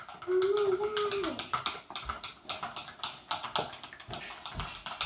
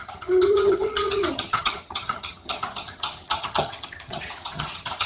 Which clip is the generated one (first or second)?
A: second